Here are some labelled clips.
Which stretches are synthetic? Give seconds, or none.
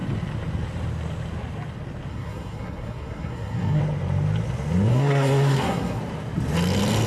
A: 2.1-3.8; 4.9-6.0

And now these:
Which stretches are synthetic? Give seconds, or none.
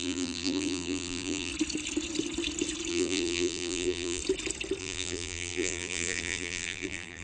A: 0.0-1.5; 2.9-4.2; 4.8-7.2